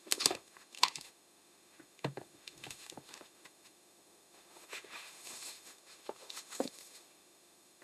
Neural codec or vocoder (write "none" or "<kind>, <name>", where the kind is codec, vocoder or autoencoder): autoencoder, DAC-VAE